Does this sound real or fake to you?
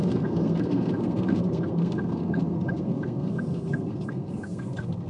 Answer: fake